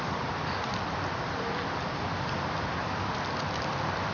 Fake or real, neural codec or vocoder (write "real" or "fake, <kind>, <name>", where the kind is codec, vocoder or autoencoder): fake, vocoder, BigVGAN v2